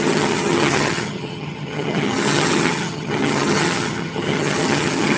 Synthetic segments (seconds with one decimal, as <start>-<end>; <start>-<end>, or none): 0.0-5.2